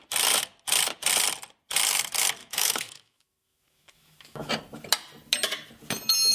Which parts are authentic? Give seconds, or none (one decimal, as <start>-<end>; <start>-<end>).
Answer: 0.0-2.4; 4.5-6.3